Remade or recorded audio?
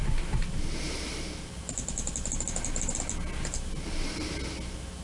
recorded